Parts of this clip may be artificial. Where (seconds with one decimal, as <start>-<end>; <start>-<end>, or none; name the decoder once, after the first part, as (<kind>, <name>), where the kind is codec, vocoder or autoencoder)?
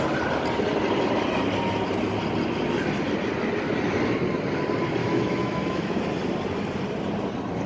5.0-6.0 (autoencoder, DAC-VAE)